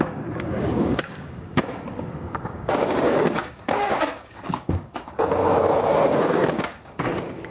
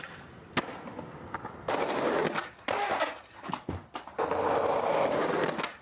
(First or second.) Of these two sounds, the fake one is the first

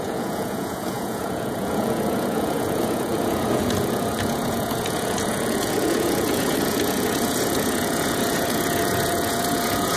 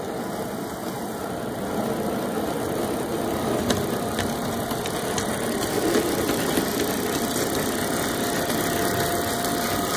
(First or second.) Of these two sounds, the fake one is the first